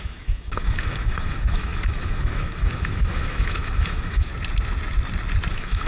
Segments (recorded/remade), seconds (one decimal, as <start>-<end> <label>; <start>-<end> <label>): 0.0-4.3 remade; 4.3-5.5 recorded; 5.5-5.9 remade